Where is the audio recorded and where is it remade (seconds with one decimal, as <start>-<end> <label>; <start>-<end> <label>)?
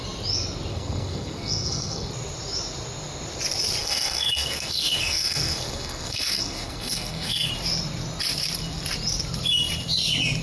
0.0-0.7 recorded; 0.7-2.1 remade; 2.1-3.8 recorded; 3.8-7.5 remade; 7.5-10.4 recorded